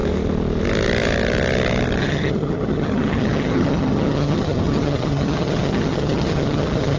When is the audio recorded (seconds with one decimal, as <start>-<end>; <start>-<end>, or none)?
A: 0.0-2.0